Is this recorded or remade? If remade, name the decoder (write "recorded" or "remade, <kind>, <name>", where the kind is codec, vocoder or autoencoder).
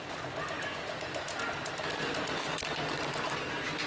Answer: recorded